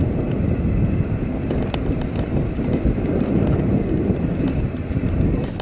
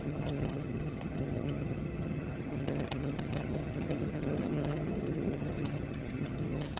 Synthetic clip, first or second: second